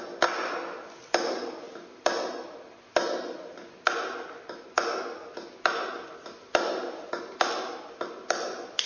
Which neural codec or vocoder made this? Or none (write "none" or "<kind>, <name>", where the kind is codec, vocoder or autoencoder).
none